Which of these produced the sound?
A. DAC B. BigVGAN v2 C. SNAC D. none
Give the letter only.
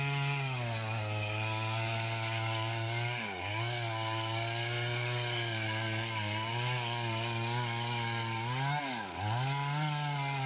A